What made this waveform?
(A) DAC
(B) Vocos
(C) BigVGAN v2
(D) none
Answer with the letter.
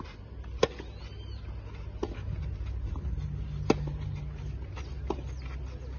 D